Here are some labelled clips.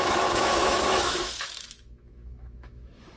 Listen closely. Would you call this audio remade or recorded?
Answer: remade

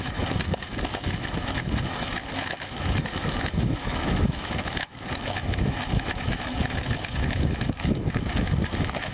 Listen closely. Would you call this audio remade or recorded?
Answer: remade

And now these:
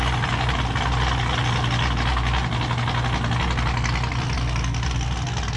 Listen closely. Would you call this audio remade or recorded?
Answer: recorded